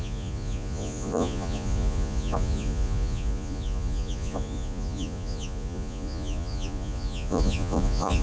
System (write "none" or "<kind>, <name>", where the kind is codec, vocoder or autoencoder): vocoder, Vocos